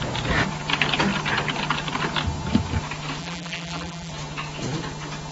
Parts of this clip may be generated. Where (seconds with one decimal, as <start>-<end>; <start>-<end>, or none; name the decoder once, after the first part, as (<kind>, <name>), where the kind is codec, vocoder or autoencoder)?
3.2-4.1 (vocoder, BigVGAN v2)